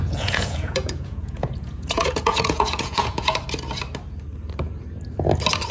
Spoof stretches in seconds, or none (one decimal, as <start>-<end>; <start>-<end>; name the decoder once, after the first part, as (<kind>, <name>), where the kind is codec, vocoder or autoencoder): 0.0-3.4 (vocoder, Vocos)